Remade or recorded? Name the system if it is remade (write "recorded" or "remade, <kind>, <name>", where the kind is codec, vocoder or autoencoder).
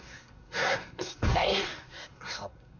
remade, codec, SNAC